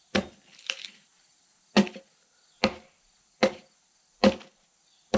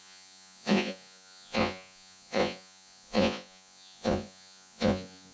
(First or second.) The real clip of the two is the first